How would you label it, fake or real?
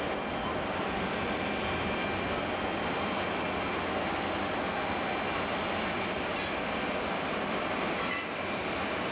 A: real